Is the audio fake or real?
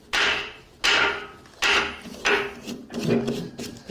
real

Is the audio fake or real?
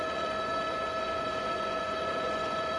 fake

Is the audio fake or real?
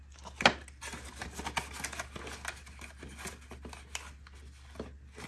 real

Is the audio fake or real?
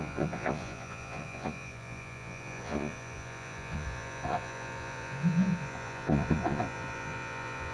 fake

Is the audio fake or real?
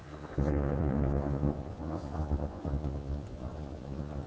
fake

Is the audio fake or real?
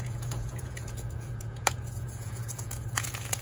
fake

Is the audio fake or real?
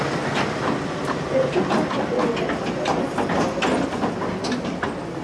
real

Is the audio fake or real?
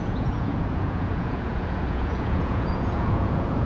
fake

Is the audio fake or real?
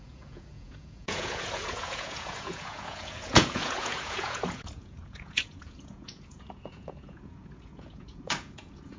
fake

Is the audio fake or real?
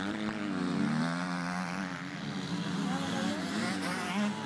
real